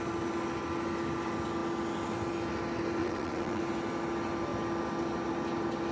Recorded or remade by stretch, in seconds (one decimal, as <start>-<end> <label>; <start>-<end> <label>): 0.0-3.0 recorded; 3.0-3.6 remade; 3.6-5.9 recorded